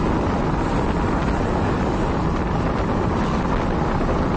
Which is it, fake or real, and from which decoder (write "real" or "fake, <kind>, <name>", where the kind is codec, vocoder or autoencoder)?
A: real